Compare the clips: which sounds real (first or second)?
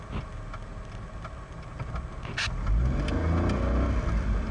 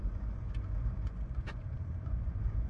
first